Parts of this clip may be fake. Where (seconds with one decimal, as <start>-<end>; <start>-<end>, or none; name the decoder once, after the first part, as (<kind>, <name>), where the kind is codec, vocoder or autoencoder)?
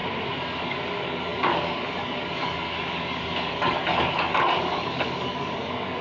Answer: 0.6-6.0 (codec, DAC)